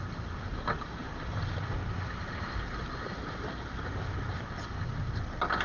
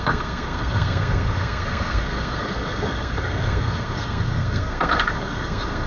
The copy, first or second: second